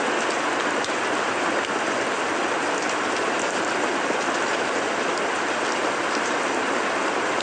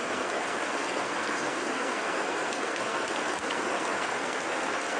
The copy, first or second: second